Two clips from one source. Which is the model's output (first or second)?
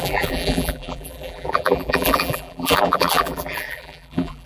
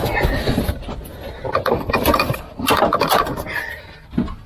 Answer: first